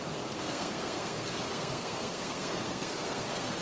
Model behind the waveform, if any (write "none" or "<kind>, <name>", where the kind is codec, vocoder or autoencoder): codec, SNAC